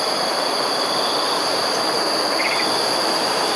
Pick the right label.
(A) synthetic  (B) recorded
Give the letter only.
A